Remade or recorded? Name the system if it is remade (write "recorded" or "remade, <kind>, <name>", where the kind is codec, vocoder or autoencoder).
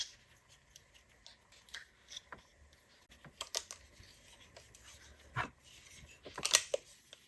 recorded